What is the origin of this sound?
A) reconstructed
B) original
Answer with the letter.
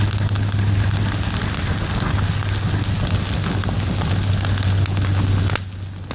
B